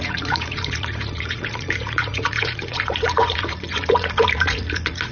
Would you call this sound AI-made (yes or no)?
yes